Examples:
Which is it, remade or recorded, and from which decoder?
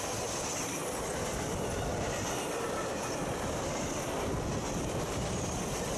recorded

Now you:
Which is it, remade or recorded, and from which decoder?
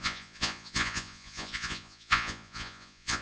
remade, vocoder, Vocos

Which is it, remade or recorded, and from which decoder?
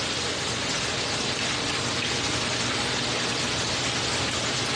recorded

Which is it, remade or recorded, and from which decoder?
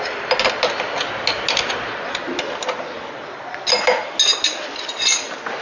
recorded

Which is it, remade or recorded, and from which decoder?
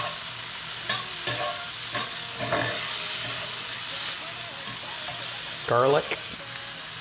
recorded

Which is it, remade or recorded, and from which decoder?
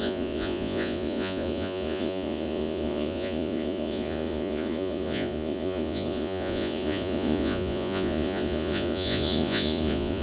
remade, vocoder, Vocos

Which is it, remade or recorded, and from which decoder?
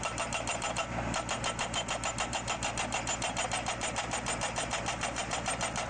recorded